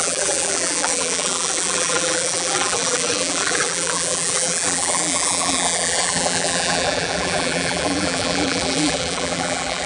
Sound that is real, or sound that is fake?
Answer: fake